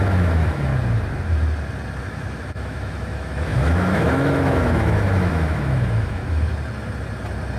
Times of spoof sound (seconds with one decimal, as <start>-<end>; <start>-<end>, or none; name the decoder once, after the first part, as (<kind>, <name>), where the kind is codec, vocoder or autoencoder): 0.0-0.7 (autoencoder, DAC-VAE); 2.0-6.5